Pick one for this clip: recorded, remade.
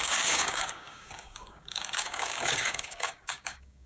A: remade